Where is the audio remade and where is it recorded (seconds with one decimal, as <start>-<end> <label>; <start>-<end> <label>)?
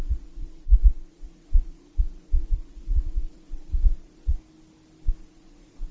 0.0-4.4 remade; 4.4-5.2 recorded; 5.2-5.9 remade